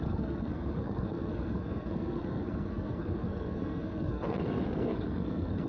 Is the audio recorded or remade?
remade